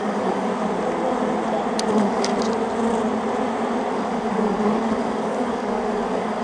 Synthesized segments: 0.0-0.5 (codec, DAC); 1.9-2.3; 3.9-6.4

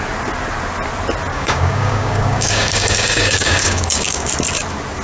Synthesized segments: 1.3-4.3 (codec, DAC)

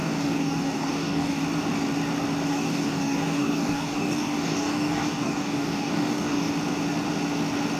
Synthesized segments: 0.0-1.4 (codec, DAC); 2.5-6.5

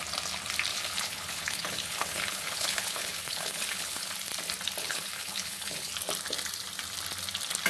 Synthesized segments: 0.7-4.1 (codec, HILCodec); 4.8-5.9

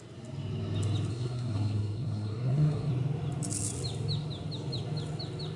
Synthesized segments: 1.1-2.9 (codec, SNAC)